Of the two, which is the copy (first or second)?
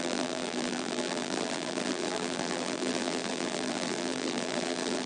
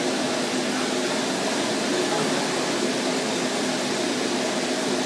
first